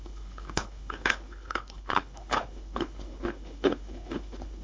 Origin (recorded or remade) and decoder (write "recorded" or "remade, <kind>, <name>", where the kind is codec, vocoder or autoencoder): remade, codec, HILCodec